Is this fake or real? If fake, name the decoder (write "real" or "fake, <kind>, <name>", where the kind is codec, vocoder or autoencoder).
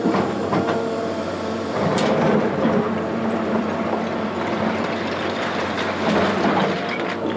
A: fake, vocoder, BigVGAN v2